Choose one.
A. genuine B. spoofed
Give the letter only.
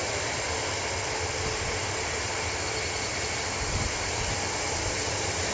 A